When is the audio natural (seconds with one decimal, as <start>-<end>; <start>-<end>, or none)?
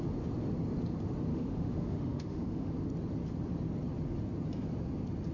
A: 0.0-1.3; 2.7-5.3